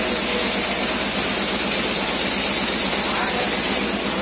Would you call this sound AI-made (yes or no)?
no